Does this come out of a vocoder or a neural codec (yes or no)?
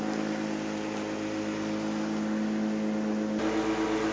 no